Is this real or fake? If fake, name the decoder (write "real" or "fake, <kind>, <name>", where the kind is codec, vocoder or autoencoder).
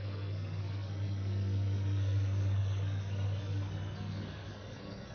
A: fake, codec, SNAC